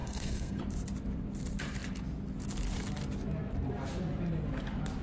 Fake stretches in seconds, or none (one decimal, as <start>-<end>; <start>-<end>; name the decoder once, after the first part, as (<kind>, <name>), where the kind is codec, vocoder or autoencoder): 0.0-0.6 (codec, SNAC)

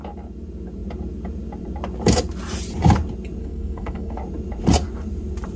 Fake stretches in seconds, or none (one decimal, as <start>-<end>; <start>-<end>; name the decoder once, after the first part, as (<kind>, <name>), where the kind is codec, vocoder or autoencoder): 3.4-4.2 (codec, SNAC)

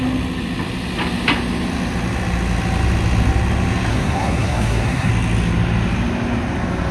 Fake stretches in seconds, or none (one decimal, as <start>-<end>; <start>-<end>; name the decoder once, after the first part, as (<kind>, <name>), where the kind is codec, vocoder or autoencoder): 3.9-5.1 (codec, SNAC)